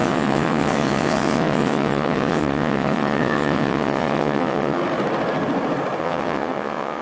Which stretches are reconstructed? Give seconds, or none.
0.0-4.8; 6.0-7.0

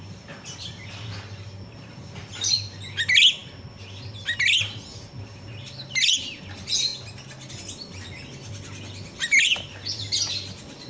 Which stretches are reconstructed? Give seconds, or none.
none